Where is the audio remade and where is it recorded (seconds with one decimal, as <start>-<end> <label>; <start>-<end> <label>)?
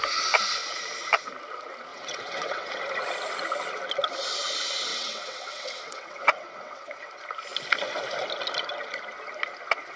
0.0-1.9 recorded; 1.9-2.8 remade; 2.8-4.9 recorded; 4.9-7.1 remade; 7.1-10.0 recorded